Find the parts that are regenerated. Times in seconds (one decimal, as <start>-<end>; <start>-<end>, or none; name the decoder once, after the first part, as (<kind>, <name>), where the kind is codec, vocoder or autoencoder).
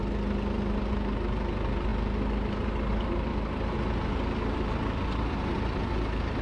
none